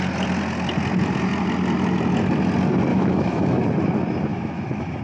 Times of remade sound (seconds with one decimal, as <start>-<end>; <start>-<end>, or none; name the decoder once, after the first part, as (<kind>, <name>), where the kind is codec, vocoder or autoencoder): 2.9-3.6 (autoencoder, DAC-VAE); 4.3-5.0